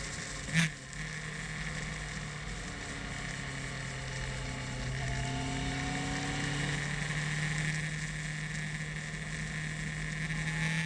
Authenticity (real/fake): real